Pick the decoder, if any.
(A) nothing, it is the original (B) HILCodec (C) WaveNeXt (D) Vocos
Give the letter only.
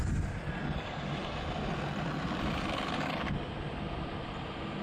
A